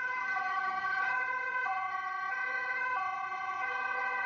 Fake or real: fake